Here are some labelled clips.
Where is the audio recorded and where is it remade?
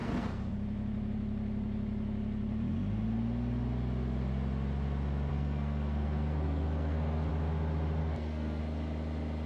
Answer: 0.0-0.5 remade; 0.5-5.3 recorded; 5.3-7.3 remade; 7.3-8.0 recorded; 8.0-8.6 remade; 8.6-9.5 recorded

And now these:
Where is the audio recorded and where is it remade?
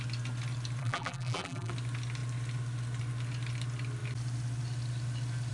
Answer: 0.0-0.8 recorded; 0.8-1.7 remade; 1.7-5.5 recorded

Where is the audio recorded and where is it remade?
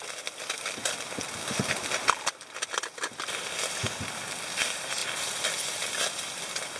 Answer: 0.0-6.8 recorded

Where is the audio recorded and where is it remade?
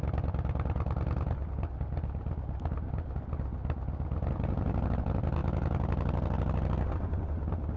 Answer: 0.0-7.8 recorded